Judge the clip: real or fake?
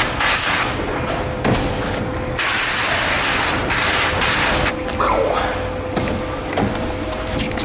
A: real